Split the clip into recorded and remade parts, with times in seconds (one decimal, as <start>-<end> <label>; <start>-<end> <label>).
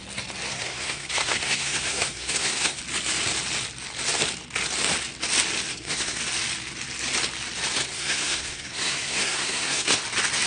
0.0-0.5 recorded; 0.5-2.8 remade; 2.8-5.7 recorded; 5.7-6.2 remade; 6.2-7.9 recorded; 7.9-10.0 remade; 10.0-10.5 recorded